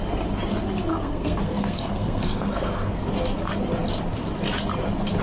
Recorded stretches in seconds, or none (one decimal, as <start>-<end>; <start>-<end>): 0.0-0.9; 3.0-5.2